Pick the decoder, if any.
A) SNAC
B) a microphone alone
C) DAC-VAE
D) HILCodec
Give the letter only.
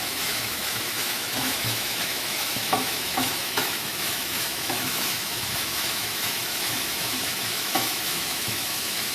C